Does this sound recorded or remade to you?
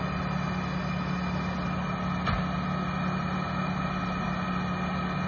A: recorded